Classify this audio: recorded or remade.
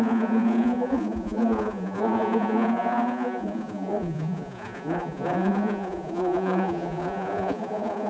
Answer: remade